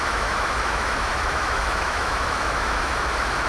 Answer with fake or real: fake